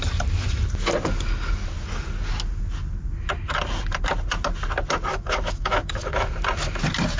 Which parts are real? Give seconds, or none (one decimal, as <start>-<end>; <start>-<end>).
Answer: 0.0-5.1; 6.3-7.2